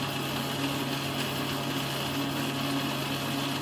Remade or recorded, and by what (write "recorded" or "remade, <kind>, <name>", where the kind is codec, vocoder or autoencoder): recorded